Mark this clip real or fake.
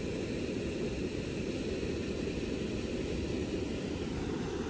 real